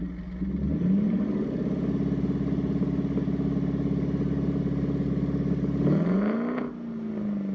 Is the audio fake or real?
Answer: real